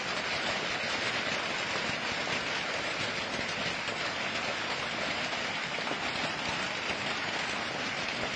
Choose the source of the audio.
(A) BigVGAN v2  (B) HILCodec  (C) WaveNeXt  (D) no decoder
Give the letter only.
D